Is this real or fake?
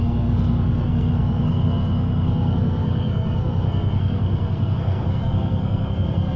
fake